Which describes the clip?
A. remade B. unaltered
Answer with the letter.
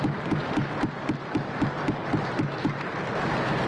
B